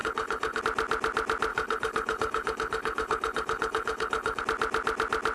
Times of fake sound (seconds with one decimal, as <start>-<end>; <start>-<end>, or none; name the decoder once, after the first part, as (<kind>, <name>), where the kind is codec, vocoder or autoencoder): 0.0-0.6 (codec, HILCodec); 1.5-4.4

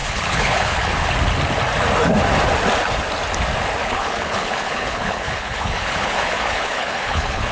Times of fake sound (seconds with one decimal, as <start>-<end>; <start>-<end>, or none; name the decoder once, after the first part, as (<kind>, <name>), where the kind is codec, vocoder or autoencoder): 0.0-1.1 (codec, HILCodec); 3.8-7.5

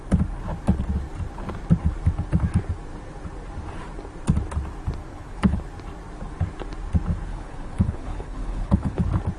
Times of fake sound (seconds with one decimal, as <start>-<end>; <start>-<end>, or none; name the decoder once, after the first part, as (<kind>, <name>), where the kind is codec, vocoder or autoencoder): 5.1-5.6 (codec, HILCodec); 7.3-9.0